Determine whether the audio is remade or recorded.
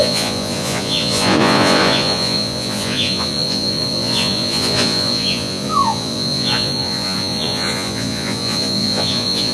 remade